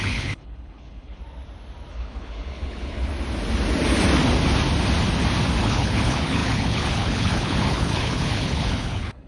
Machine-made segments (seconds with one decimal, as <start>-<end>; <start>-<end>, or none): 0.0-1.2; 1.9-3.1; 5.6-9.3